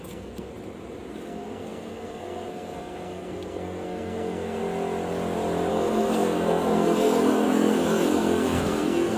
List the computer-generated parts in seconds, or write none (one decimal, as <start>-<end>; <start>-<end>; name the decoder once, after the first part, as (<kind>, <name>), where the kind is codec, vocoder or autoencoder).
0.0-0.5 (codec, SNAC); 1.1-4.6; 5.7-9.2